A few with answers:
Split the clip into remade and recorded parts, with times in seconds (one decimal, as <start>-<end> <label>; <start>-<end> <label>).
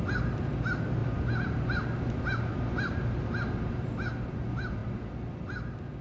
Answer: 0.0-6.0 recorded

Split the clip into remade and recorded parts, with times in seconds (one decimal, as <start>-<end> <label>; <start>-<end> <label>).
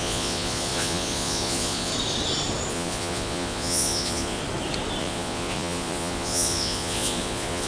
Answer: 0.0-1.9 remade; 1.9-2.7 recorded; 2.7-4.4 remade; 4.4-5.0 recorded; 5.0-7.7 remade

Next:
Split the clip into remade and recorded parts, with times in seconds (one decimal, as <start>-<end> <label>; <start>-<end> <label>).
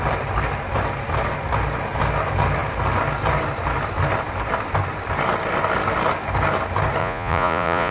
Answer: 0.0-7.0 recorded; 7.0-7.9 remade